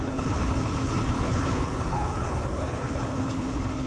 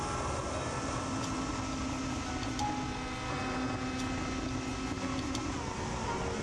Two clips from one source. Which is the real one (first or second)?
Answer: second